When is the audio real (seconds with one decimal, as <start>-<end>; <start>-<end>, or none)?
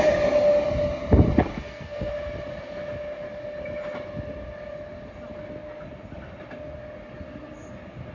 0.0-1.5; 2.1-8.1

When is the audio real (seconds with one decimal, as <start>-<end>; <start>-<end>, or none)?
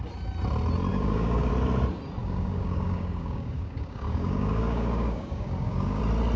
0.0-0.9; 1.5-2.2; 6.0-6.4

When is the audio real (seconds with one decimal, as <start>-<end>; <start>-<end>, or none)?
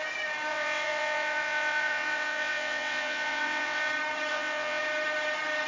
0.0-0.5; 3.9-4.3; 4.8-5.7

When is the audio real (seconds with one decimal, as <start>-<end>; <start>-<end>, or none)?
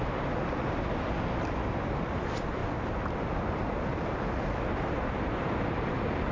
0.0-6.3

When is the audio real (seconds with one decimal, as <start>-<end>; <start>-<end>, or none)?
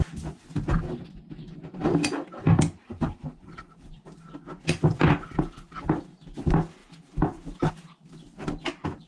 0.0-2.8; 3.9-9.1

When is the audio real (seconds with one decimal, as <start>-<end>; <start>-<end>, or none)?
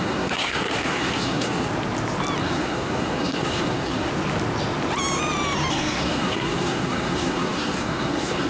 1.7-2.4; 4.1-5.7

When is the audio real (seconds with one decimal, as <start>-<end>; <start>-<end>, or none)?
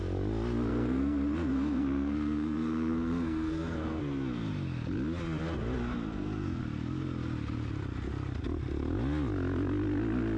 0.0-0.7; 4.0-6.1; 6.6-10.4